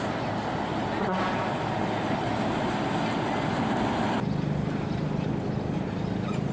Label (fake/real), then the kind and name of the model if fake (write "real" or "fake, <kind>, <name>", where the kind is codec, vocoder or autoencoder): real